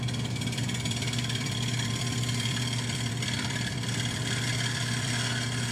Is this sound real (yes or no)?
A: no